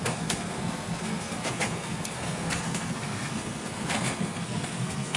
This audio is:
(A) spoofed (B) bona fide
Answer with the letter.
A